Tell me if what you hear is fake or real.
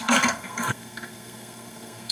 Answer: fake